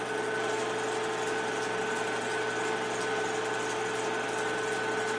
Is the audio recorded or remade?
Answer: recorded